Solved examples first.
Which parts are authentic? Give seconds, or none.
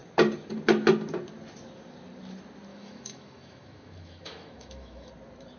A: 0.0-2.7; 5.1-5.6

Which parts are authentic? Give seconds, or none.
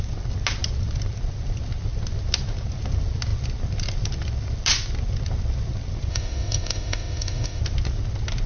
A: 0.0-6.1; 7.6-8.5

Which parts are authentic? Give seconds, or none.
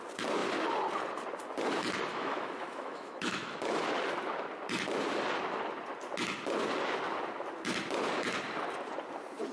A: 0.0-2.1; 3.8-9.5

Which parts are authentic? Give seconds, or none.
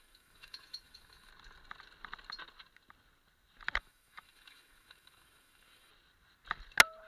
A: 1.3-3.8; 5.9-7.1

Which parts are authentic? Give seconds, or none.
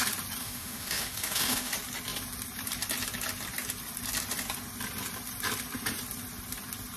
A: 0.0-0.4; 1.7-7.0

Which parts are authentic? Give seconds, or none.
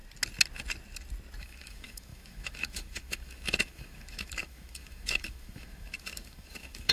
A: 0.0-1.4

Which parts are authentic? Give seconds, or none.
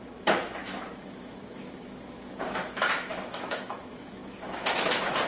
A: none